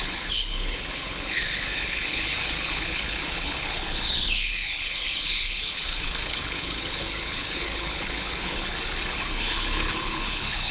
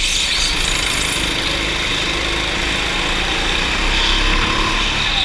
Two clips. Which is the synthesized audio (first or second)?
first